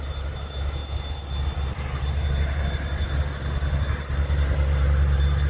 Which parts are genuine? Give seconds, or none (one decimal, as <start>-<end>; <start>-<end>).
0.0-5.5